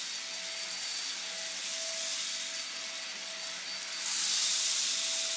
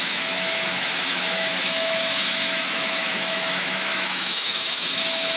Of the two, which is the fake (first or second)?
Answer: second